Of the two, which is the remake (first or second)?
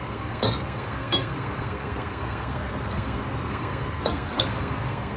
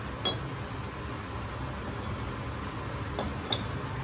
first